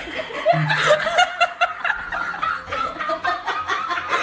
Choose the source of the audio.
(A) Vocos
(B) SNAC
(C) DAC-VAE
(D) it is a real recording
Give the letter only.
D